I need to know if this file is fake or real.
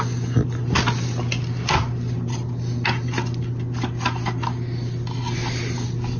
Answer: real